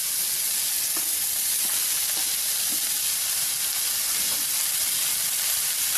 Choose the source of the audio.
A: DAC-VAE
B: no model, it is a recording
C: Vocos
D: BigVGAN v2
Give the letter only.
B